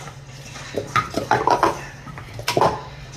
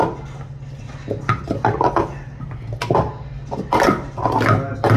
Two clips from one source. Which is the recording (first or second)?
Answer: second